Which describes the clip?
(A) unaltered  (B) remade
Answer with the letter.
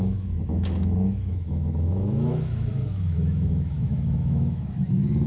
B